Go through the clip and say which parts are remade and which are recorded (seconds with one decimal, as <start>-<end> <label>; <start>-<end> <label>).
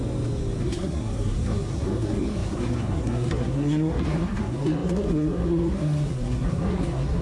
0.0-0.6 recorded; 0.6-7.2 remade